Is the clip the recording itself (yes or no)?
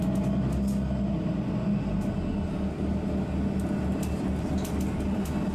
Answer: yes